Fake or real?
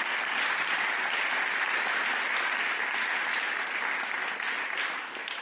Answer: real